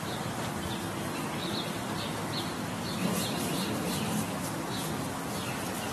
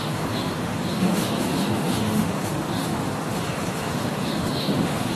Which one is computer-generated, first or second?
second